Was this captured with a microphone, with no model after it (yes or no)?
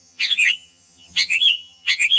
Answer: no